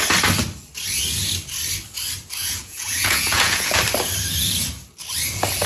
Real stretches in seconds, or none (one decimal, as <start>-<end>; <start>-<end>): 0.0-2.4; 3.8-5.7